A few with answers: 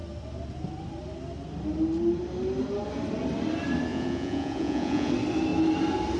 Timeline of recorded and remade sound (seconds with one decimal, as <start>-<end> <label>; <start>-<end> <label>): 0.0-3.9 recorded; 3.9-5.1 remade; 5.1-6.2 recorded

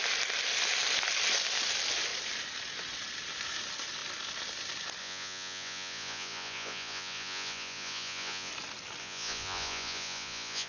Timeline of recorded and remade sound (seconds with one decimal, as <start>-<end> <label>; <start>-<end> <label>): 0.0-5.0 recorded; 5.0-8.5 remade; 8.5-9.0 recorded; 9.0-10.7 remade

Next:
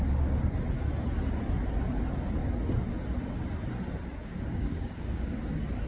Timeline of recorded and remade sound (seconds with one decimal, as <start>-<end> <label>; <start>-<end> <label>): 0.0-4.2 recorded; 4.2-5.4 remade; 5.4-5.9 recorded

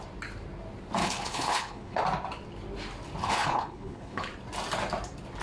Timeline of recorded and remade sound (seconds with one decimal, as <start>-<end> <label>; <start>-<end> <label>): 0.0-1.0 recorded; 1.0-2.0 remade; 2.0-3.2 recorded; 3.2-4.3 remade; 4.3-5.4 recorded

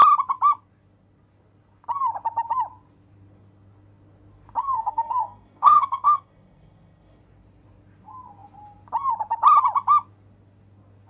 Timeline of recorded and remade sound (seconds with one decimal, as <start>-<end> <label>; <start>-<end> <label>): 0.0-4.6 recorded; 4.6-7.2 remade; 7.2-11.1 recorded

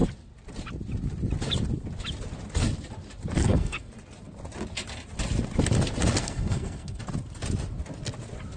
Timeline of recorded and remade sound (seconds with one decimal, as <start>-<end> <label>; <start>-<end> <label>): 0.0-3.4 recorded; 3.4-3.9 remade; 3.9-6.2 recorded; 6.2-7.0 remade; 7.0-8.6 recorded

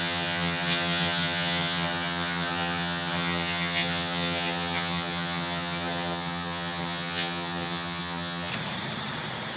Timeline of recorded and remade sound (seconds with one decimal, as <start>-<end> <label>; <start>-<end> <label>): 0.0-8.5 remade; 8.5-9.6 recorded

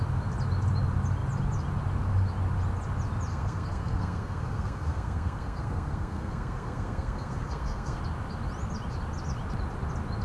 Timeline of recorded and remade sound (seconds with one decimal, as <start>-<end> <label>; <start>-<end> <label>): 0.0-3.3 recorded; 3.3-8.0 remade; 8.0-10.2 recorded